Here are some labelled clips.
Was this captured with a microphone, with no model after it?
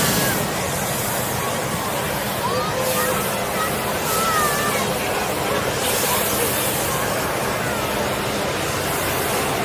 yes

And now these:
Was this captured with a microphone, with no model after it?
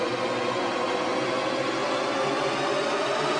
yes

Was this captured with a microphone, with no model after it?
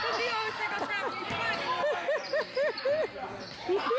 yes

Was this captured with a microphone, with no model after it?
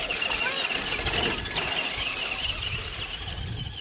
yes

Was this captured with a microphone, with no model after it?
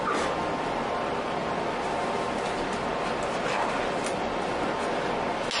yes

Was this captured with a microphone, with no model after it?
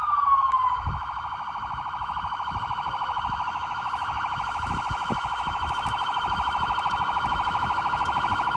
no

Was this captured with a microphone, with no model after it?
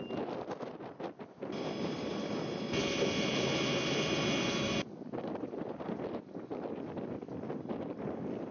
yes